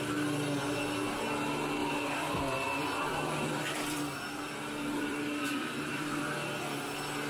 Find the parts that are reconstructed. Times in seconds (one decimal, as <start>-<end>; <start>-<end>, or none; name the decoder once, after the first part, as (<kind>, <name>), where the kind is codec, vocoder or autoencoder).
1.8-6.2 (vocoder, BigVGAN v2)